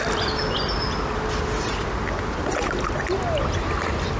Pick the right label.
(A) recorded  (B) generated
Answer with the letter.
A